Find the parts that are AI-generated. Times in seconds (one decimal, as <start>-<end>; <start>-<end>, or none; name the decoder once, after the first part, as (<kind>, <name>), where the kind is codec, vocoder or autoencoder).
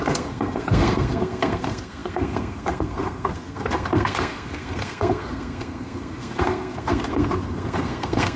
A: 0.0-8.4 (codec, SNAC)